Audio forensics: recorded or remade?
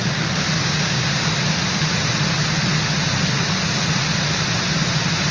recorded